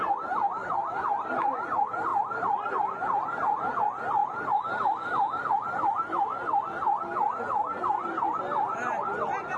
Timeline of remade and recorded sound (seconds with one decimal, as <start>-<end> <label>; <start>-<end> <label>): 0.0-2.1 recorded; 2.1-2.7 remade; 2.7-4.2 recorded; 4.2-5.4 remade; 5.4-9.6 recorded